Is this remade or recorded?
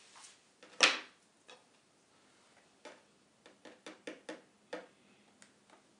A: recorded